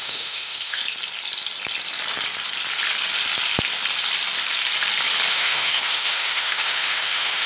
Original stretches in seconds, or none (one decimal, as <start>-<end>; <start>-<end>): 0.8-5.3